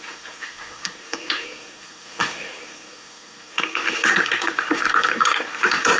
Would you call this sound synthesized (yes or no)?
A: yes